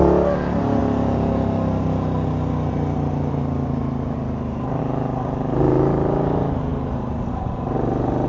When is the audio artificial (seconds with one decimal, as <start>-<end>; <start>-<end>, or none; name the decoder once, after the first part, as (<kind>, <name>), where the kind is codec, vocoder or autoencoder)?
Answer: none